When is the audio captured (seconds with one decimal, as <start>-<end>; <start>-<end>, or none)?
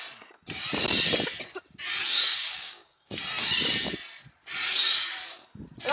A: 0.0-2.3; 3.1-5.9